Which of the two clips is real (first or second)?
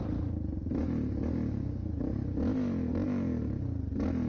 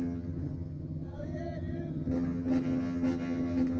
first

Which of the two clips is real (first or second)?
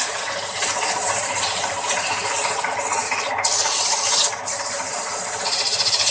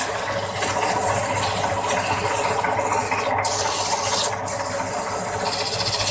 second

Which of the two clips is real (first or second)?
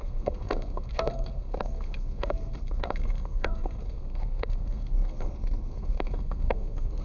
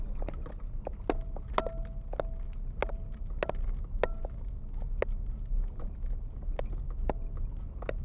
second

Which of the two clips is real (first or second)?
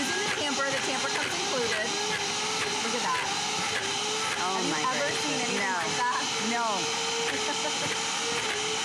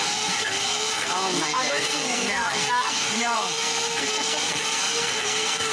first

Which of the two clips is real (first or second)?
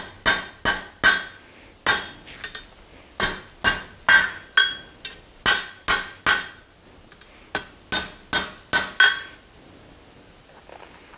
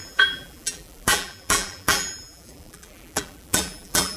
first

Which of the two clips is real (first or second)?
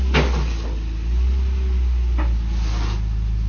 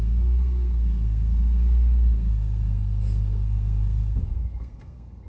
first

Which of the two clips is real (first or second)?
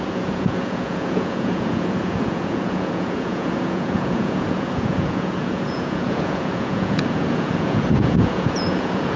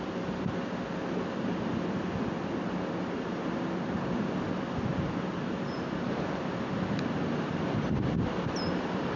second